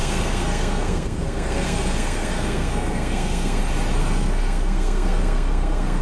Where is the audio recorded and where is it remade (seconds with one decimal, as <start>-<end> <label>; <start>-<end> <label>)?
0.0-3.6 remade; 3.6-4.0 recorded; 4.0-6.0 remade